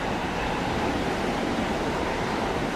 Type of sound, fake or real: fake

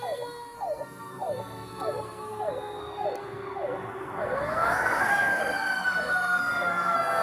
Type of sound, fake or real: fake